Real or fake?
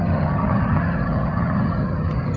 fake